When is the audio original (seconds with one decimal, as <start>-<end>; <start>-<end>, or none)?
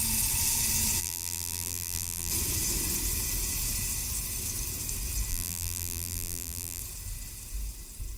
0.0-1.0; 2.3-5.3; 6.8-8.2